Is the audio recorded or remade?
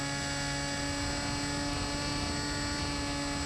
recorded